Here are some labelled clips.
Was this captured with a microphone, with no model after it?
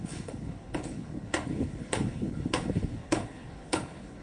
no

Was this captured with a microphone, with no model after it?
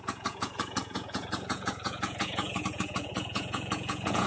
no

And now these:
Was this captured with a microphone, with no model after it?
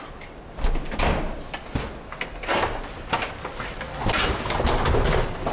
yes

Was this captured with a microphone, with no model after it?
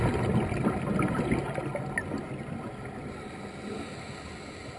yes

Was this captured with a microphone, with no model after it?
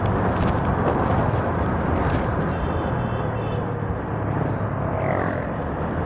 yes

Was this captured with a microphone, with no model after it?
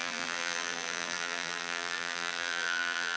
no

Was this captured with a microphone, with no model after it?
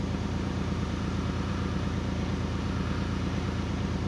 no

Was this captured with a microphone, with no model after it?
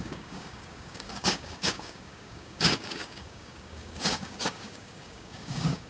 no